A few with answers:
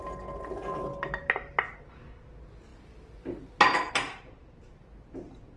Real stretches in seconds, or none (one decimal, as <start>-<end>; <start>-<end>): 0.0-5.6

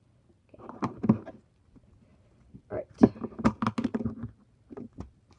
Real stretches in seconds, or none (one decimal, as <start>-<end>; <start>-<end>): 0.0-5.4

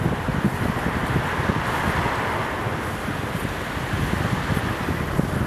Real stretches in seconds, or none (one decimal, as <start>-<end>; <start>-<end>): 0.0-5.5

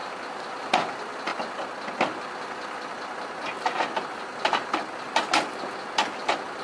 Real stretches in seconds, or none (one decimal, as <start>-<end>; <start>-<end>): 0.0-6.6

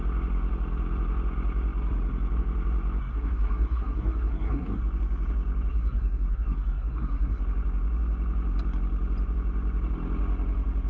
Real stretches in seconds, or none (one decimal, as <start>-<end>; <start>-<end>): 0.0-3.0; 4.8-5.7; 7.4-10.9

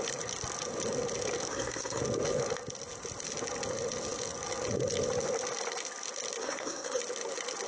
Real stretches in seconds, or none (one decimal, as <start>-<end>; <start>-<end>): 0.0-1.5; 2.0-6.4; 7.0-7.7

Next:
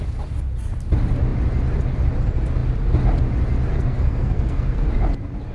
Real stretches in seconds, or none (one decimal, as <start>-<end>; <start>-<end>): 0.0-3.7; 4.9-5.5